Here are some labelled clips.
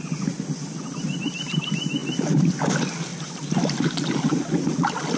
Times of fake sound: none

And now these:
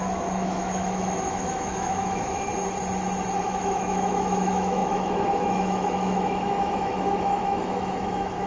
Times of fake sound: 0.0-2.5 (autoencoder, DAC-VAE); 3.4-8.5

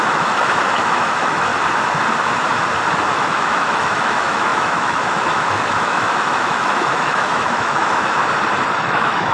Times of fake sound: 0.0-1.5 (autoencoder, DAC-VAE); 3.1-8.2; 8.8-9.3

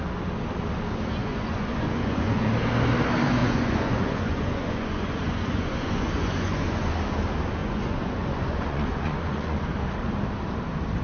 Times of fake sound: 1.2-2.5 (vocoder, Vocos); 3.4-6.9; 7.6-9.6

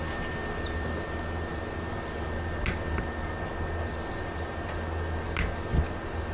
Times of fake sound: none